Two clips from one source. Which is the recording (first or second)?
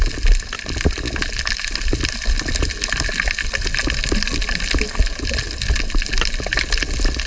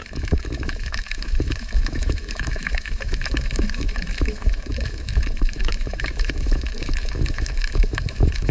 first